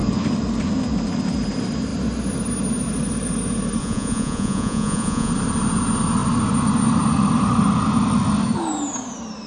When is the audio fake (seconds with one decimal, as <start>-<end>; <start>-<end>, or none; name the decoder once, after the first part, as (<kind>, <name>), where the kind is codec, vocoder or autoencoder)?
3.8-5.3 (vocoder, Vocos)